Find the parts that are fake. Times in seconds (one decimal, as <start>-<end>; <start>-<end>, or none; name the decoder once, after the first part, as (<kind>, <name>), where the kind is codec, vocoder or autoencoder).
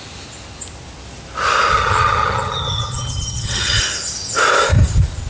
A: 1.7-3.8 (vocoder, HiFi-GAN)